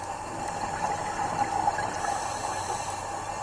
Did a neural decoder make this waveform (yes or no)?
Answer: no